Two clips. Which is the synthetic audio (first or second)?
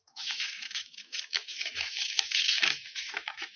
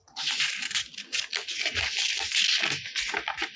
first